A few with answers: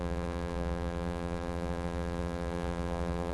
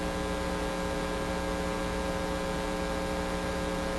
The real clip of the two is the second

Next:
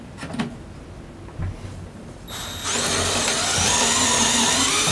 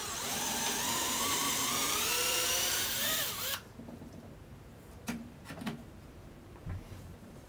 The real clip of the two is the first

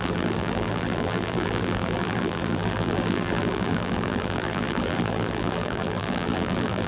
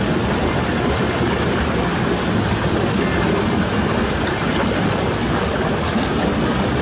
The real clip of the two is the second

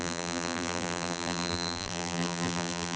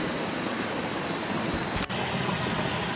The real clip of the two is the second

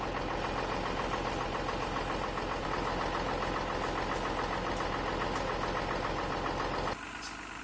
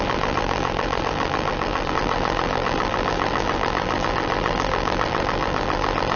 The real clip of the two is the first